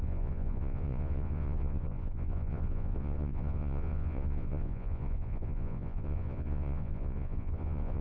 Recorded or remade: remade